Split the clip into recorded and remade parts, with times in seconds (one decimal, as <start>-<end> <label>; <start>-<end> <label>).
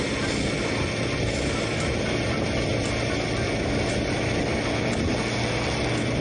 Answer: 0.0-6.2 recorded